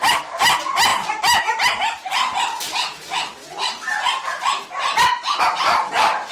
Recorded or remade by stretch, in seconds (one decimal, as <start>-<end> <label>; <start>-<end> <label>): 0.0-3.4 remade; 3.4-5.4 recorded; 5.4-6.3 remade

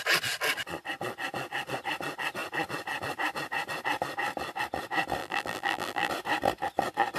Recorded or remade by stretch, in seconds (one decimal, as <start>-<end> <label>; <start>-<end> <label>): 0.0-5.2 recorded; 5.2-6.1 remade; 6.1-7.2 recorded

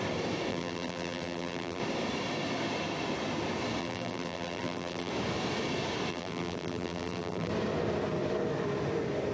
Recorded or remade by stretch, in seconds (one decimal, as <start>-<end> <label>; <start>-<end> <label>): 0.0-0.5 recorded; 0.5-1.8 remade; 1.8-3.8 recorded; 3.8-5.1 remade; 5.1-6.1 recorded; 6.1-7.5 remade; 7.5-9.3 recorded

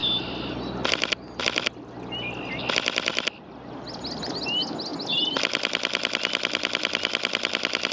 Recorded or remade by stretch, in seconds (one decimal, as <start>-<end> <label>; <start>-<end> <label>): 0.0-4.9 recorded; 4.9-7.9 remade

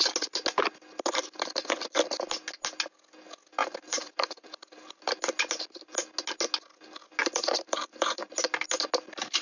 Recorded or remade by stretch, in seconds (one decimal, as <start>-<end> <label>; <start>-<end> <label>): 0.0-3.6 recorded; 3.6-5.0 remade; 5.0-7.2 recorded; 7.2-8.3 remade; 8.3-9.4 recorded